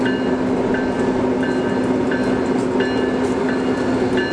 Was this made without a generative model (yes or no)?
yes